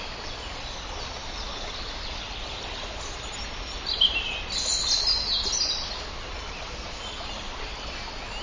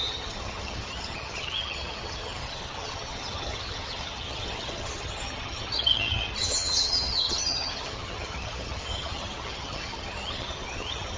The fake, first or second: second